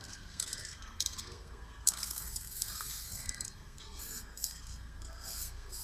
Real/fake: fake